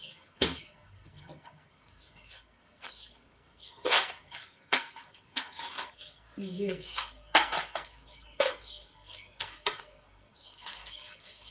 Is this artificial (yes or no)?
yes